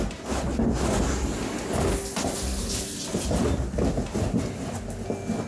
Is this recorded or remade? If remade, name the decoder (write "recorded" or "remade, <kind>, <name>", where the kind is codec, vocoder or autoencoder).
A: recorded